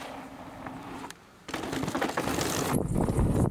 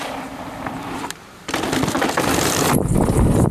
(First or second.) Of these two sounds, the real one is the first